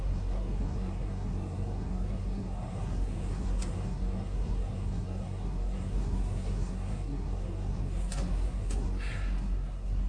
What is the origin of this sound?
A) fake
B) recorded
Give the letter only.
A